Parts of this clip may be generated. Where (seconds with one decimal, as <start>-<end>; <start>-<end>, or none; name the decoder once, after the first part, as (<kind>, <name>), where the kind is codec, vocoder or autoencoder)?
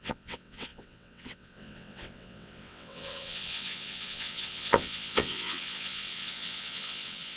0.0-7.4 (vocoder, WaveNeXt)